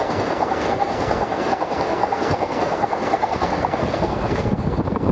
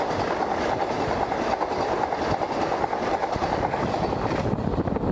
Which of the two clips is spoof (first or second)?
first